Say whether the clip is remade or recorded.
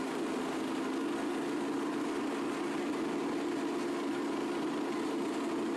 recorded